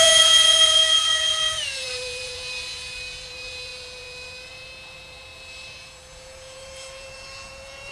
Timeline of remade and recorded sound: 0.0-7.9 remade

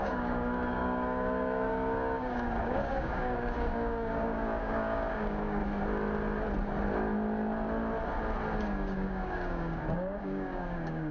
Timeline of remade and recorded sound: 0.0-5.6 remade; 5.6-8.6 recorded; 8.6-11.1 remade

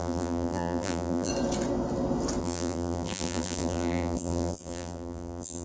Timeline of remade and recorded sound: 0.0-1.3 remade; 1.3-2.4 recorded; 2.4-5.6 remade

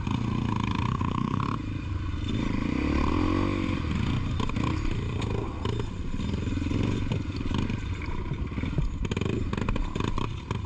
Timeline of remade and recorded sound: 0.0-0.9 recorded; 0.9-1.4 remade; 1.4-10.7 recorded